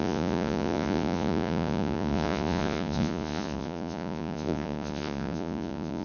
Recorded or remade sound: remade